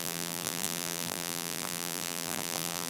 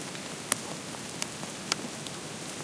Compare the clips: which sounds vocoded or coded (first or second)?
first